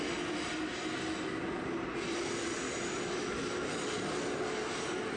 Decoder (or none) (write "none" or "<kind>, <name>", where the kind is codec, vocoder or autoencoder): none